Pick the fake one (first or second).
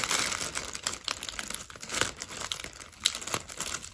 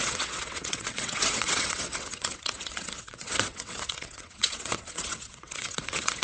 second